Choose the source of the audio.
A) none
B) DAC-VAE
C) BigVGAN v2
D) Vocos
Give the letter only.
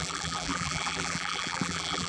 C